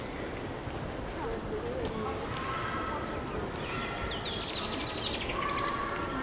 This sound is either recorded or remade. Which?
recorded